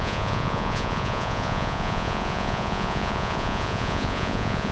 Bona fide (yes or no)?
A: no